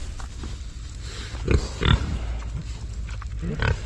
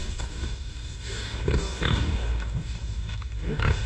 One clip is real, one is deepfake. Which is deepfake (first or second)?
second